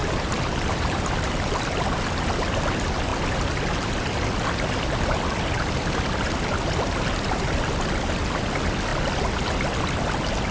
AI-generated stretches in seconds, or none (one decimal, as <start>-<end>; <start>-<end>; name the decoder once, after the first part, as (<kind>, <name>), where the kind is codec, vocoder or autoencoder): 0.0-1.5 (vocoder, BigVGAN v2)